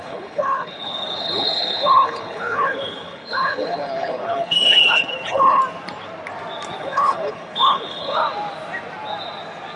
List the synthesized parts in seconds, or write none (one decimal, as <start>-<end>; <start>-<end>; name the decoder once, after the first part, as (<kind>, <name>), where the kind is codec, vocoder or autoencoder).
0.0-5.6 (codec, HILCodec); 6.8-8.2